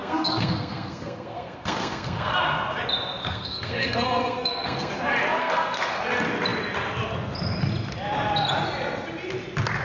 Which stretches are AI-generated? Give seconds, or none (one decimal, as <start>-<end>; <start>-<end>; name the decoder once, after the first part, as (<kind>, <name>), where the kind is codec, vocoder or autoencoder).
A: 0.0-2.3 (codec, SNAC); 3.2-4.9; 5.4-6.0